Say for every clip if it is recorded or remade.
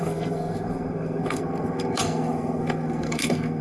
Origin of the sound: remade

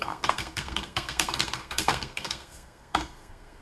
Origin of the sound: remade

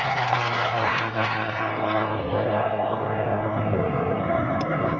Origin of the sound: remade